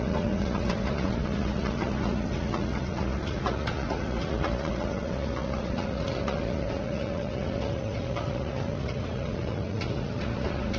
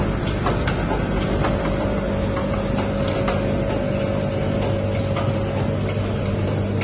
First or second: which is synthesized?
first